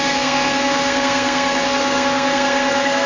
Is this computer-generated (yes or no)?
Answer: yes